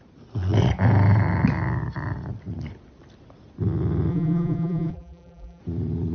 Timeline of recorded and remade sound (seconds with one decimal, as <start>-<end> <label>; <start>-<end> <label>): 0.0-4.1 recorded; 4.1-5.6 remade; 5.6-6.1 recorded